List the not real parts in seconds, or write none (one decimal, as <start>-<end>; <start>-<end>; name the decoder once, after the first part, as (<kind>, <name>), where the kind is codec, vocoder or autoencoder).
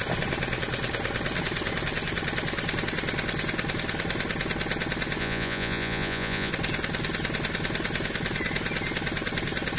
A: 5.2-6.5 (vocoder, Vocos)